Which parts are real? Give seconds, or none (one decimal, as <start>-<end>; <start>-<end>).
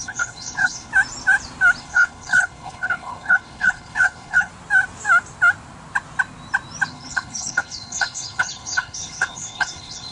0.9-1.8; 4.5-6.9